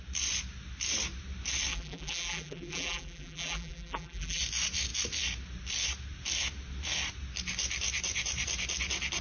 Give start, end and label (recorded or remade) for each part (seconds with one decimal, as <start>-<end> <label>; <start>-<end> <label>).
0.0-1.7 recorded; 1.7-4.4 remade; 4.4-9.2 recorded